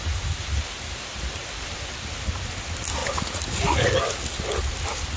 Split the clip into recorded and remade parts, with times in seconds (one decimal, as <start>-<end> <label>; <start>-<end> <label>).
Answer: 0.0-5.2 recorded